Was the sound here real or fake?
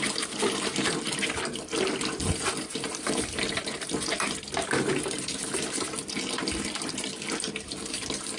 real